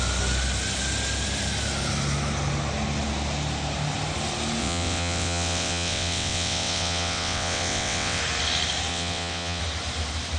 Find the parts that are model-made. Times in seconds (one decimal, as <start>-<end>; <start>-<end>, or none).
4.6-8.2; 8.9-9.6